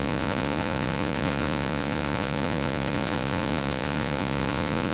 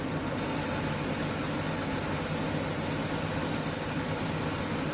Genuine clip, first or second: second